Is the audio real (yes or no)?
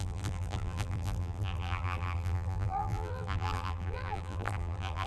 no